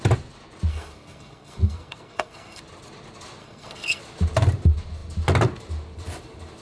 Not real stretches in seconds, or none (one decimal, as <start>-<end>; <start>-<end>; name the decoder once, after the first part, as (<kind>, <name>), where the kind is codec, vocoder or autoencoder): 0.7-2.6 (codec, SNAC); 3.4-4.0